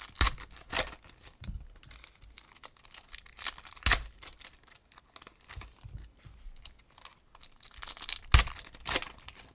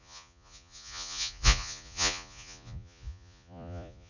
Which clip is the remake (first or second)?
second